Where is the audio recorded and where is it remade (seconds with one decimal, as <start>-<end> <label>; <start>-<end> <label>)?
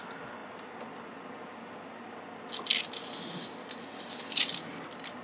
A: 0.0-5.2 recorded